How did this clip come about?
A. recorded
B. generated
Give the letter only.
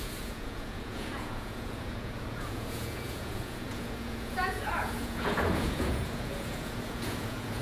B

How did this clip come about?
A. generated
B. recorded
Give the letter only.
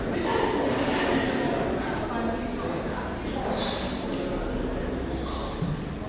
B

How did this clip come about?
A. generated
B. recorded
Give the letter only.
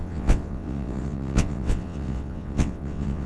A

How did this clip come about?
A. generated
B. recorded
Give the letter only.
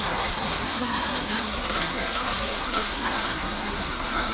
A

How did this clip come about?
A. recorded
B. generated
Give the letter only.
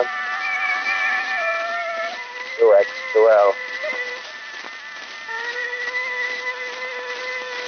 A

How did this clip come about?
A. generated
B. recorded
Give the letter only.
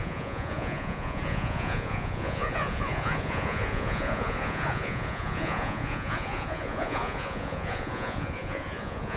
A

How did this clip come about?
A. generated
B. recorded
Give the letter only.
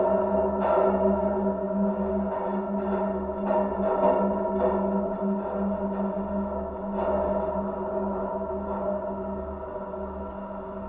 B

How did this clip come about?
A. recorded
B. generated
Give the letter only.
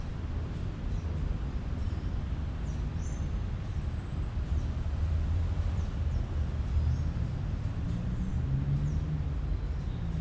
A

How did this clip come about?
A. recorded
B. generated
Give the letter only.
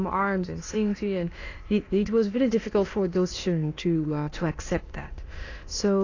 B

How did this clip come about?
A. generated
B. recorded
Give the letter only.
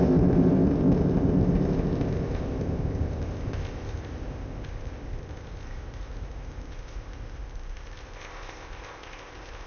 A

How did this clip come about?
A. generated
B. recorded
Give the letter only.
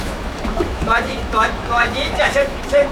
A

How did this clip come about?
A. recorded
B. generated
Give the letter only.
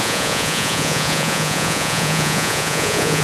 B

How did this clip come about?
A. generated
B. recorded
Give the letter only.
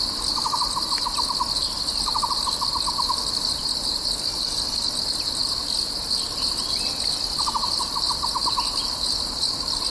B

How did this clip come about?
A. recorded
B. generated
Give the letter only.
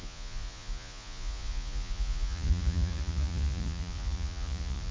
B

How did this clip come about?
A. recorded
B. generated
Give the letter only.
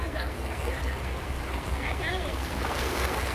B